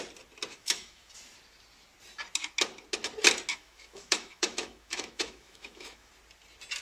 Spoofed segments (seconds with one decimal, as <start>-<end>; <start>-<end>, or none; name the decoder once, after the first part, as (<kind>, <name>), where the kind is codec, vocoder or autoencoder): 0.5-1.1 (autoencoder, DAC-VAE); 3.5-6.1